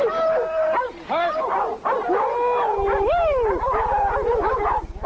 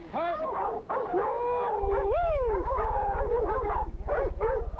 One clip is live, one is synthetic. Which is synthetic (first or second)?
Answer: second